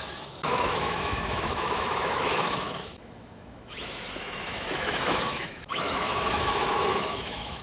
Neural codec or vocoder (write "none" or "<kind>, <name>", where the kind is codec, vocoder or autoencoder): autoencoder, DAC-VAE